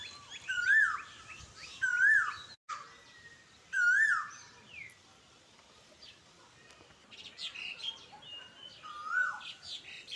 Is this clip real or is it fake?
real